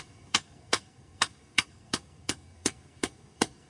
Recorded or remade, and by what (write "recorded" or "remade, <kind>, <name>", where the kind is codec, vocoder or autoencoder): remade, codec, SNAC